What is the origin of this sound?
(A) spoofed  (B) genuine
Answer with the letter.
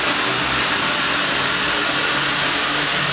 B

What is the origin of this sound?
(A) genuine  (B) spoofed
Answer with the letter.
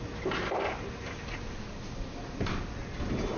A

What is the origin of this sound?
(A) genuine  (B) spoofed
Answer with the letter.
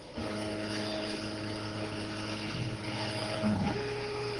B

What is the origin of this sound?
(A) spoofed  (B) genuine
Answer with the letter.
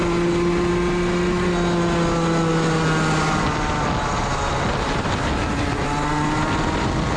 B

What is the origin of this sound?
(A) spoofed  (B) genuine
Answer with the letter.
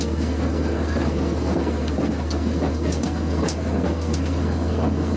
A